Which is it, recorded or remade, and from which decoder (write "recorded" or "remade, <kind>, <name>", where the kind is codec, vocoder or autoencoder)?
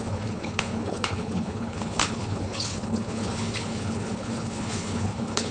remade, codec, HILCodec